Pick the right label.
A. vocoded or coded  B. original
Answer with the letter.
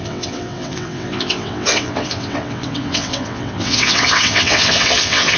A